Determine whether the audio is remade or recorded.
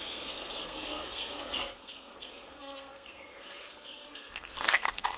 remade